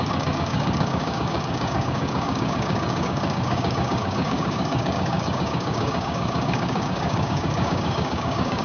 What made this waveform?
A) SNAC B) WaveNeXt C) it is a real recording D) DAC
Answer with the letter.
D